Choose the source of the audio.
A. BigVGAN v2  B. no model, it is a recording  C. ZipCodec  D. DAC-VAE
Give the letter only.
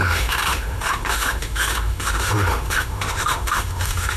D